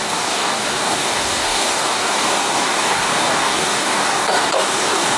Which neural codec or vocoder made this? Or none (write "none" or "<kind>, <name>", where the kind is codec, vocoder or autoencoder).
codec, DAC